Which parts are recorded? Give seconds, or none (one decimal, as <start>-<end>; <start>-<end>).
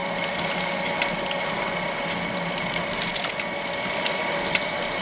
0.0-5.0